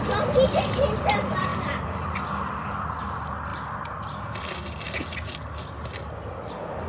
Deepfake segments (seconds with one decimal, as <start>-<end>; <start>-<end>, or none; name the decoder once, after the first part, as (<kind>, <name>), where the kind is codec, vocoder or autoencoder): none